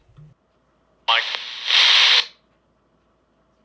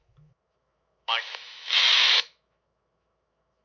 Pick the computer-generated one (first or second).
second